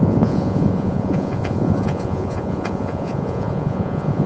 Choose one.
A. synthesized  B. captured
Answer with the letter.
A